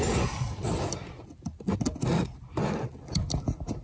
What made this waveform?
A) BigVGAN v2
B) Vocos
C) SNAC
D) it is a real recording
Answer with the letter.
D